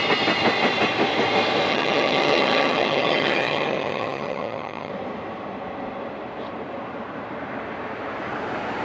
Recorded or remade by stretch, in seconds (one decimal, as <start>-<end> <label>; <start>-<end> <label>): 0.0-1.7 recorded; 1.7-4.9 remade; 4.9-8.8 recorded